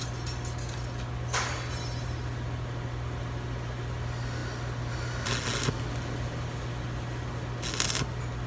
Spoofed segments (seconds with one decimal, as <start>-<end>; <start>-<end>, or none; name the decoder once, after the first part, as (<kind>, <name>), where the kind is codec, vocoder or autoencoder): none

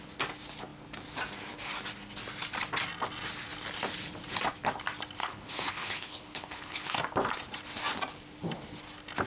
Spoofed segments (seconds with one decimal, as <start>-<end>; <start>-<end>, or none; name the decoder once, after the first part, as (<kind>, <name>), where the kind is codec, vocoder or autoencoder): 5.2-6.9 (codec, HILCodec)

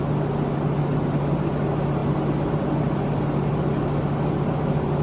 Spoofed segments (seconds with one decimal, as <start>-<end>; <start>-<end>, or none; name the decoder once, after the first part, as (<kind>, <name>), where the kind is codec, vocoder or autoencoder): none

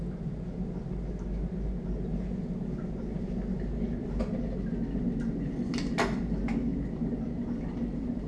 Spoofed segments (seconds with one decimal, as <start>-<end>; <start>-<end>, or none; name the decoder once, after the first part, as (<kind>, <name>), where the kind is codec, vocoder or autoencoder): none

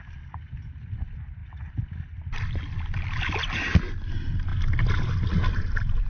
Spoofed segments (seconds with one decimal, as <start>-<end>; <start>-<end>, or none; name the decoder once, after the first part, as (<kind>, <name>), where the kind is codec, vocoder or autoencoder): none

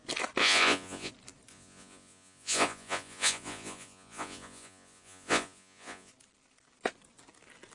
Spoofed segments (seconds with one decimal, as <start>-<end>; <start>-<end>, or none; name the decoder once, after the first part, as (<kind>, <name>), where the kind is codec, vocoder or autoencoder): 0.4-1.1 (vocoder, Vocos); 1.5-6.1

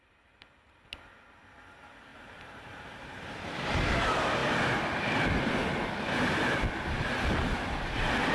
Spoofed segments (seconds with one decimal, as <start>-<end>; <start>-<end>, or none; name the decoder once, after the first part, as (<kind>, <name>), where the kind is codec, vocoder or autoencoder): 2.1-3.2 (vocoder, BigVGAN v2)

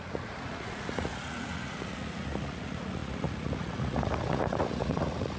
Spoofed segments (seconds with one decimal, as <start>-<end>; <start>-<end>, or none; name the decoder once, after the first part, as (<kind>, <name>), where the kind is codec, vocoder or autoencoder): 0.0-5.4 (vocoder, Vocos)